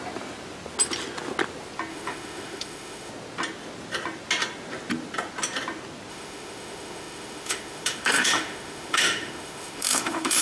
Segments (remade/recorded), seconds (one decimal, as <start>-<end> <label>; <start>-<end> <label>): 0.0-1.9 recorded; 1.9-3.1 remade; 3.1-6.1 recorded; 6.1-10.4 remade